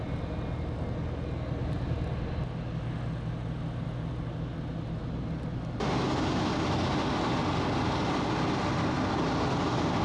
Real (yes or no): yes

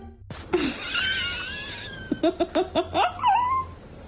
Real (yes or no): yes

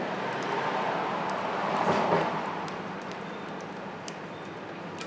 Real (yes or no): yes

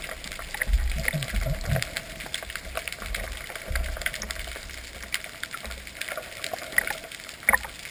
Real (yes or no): yes